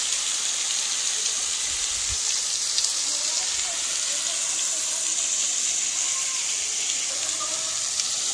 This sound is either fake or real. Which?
real